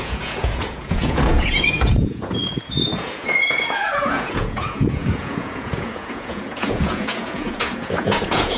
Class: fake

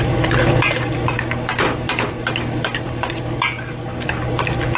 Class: real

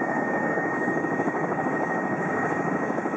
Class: fake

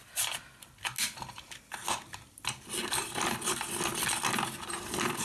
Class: real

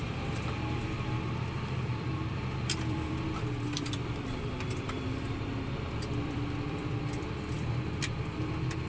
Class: fake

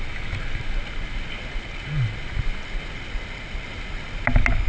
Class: real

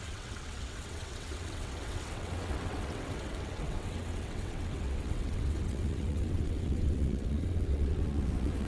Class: fake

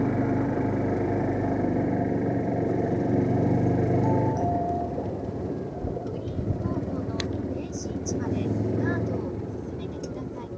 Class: fake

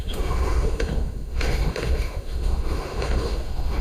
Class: fake